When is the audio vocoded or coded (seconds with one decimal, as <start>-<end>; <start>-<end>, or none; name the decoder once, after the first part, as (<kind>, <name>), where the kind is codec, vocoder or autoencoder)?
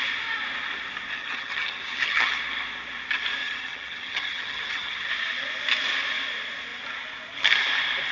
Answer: 1.2-2.3 (vocoder, HiFi-GAN); 3.4-5.1